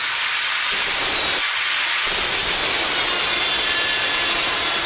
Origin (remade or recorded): recorded